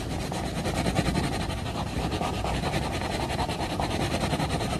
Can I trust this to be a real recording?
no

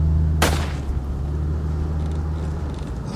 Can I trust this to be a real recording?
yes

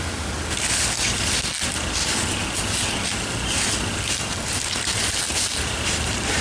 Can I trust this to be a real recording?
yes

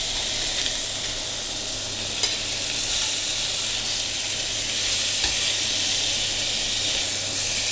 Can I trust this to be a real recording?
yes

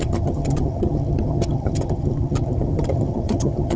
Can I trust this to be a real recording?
no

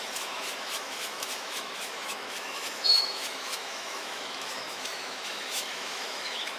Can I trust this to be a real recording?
no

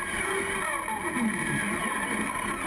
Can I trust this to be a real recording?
yes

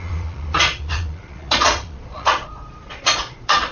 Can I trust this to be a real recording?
no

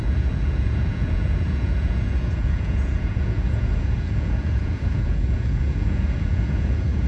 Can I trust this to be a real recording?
no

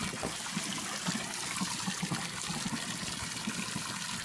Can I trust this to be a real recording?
yes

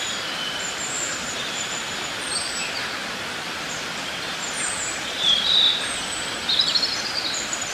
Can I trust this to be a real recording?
no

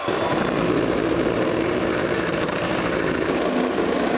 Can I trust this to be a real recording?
no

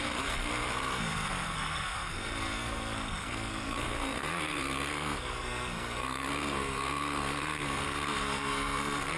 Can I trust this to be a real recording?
no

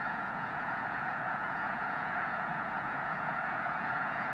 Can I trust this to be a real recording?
no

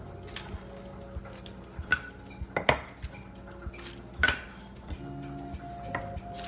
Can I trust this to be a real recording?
yes